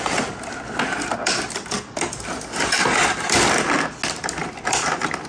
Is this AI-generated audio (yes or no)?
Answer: no